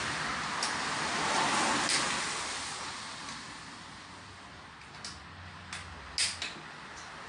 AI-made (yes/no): no